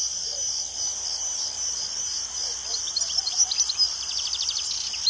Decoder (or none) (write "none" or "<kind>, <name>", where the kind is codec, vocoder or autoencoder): none